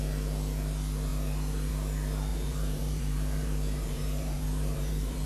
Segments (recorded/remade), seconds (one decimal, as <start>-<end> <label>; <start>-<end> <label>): 0.0-2.3 recorded; 2.3-5.3 remade